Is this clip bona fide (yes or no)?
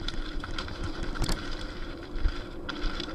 no